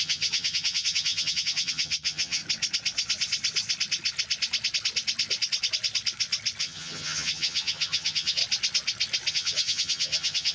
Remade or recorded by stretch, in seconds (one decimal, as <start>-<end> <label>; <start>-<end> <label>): 0.0-2.4 remade; 2.4-6.6 recorded; 6.6-8.4 remade; 8.4-9.3 recorded; 9.3-10.5 remade